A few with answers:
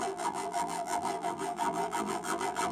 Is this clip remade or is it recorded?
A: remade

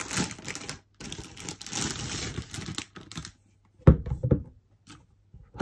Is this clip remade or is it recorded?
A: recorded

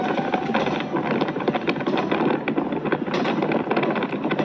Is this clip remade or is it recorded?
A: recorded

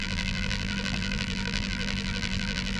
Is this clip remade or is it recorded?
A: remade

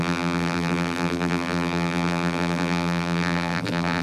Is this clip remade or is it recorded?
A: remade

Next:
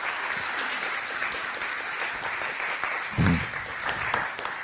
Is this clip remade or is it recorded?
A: remade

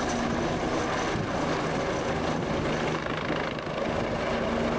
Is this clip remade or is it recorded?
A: recorded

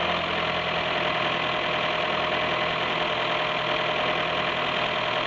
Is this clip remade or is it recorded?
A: recorded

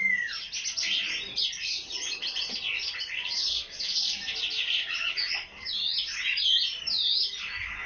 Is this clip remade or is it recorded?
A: recorded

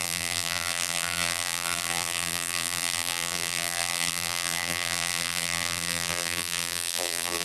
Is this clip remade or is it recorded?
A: remade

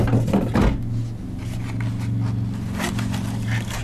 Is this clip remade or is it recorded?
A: recorded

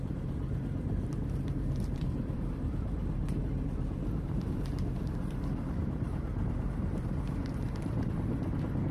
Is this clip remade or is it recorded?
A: remade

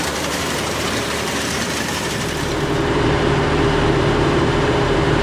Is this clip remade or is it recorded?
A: remade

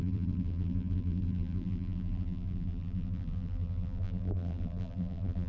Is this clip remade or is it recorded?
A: remade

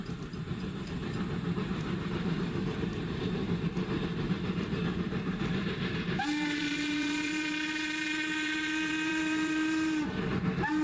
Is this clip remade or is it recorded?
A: remade